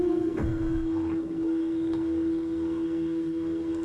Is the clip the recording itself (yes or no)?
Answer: no